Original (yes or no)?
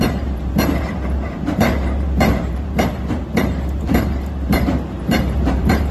no